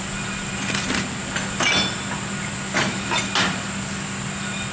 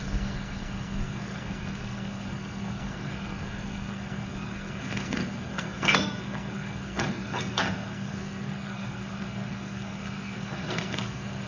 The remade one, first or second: second